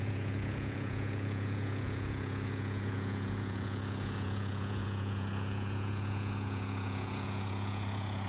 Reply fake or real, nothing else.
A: fake